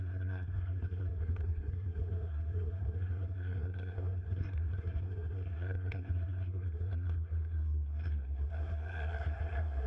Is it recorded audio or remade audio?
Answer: remade